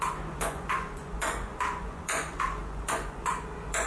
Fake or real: fake